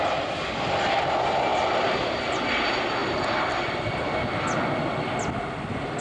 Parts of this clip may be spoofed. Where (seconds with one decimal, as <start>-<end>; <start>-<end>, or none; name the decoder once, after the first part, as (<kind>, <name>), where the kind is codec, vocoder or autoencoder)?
1.5-2.1 (vocoder, BigVGAN v2); 3.0-5.0